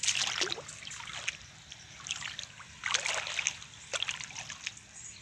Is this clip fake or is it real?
real